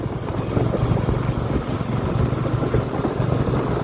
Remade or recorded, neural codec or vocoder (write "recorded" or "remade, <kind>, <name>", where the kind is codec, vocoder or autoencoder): recorded